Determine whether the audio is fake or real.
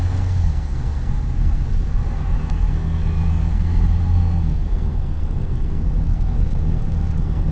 fake